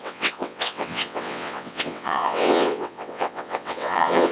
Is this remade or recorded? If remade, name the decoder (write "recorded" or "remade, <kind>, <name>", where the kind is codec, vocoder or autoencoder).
remade, vocoder, WaveNeXt